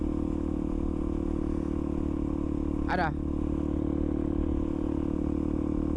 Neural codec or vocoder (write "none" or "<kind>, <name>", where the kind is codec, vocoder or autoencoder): none